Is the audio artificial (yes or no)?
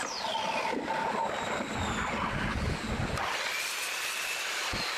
no